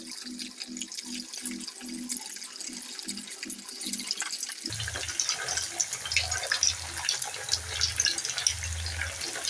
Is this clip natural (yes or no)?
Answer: yes